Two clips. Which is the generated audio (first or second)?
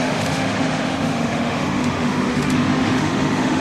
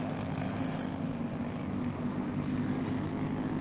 first